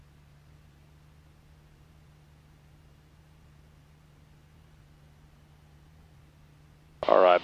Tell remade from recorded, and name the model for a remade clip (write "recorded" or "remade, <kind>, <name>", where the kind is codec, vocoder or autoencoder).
recorded